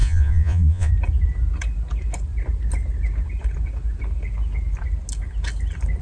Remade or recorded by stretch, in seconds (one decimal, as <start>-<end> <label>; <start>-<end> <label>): 0.0-0.9 remade; 0.9-6.0 recorded